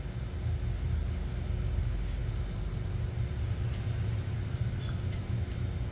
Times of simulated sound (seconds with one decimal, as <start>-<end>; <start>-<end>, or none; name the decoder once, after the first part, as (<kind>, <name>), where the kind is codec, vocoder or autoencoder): none